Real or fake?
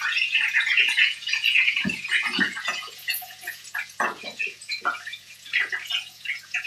fake